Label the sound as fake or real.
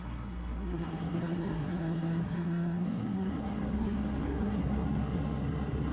fake